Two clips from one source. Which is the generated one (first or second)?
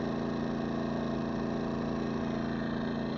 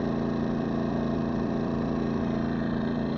second